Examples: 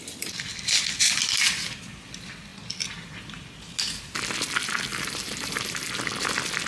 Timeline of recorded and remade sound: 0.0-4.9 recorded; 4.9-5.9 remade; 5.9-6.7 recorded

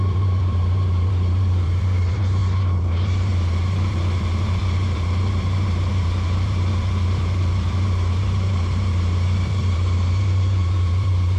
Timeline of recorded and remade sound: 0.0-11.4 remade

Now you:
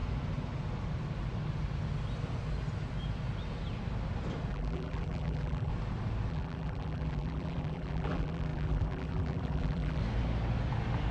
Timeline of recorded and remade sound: 0.0-4.5 recorded; 4.5-5.7 remade; 5.7-6.3 recorded; 6.3-10.0 remade; 10.0-11.1 recorded

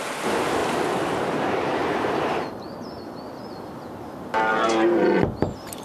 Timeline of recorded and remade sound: 0.0-1.8 recorded; 1.8-2.7 remade; 2.7-5.8 recorded

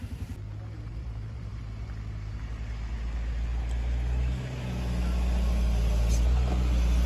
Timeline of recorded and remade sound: 0.0-0.9 recorded; 0.9-1.6 remade; 1.6-7.1 recorded